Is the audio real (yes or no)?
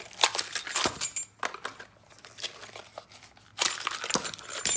yes